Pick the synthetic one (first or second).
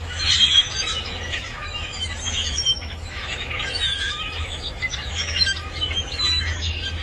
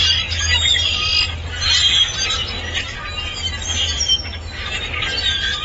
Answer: first